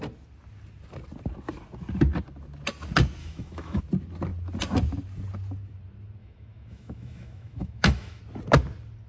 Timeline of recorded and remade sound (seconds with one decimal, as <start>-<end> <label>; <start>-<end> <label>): 0.0-3.2 recorded; 3.2-3.8 remade; 3.8-6.2 recorded; 6.2-8.2 remade; 8.2-9.1 recorded